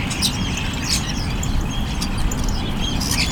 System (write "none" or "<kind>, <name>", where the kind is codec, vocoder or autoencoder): none